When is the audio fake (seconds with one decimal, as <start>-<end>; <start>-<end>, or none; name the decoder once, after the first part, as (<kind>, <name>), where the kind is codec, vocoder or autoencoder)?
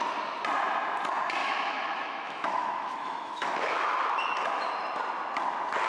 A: 1.4-4.7 (autoencoder, DAC-VAE)